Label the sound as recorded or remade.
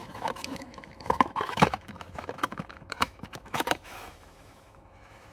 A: remade